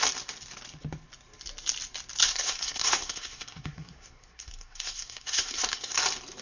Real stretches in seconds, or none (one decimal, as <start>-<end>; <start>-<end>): 0.0-2.2; 6.0-6.4